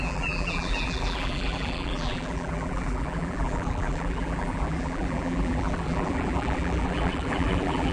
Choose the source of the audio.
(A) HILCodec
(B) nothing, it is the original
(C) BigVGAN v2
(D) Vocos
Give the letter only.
C